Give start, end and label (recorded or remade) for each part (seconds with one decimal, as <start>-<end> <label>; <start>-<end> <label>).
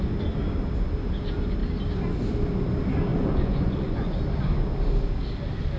0.0-3.1 recorded; 3.1-4.1 remade; 4.1-5.8 recorded